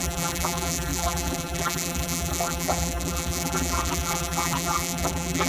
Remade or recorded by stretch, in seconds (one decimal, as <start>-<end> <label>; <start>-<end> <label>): 0.0-5.5 remade